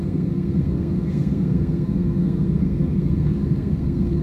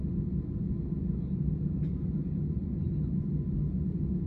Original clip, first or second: second